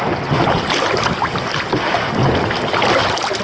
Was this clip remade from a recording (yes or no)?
no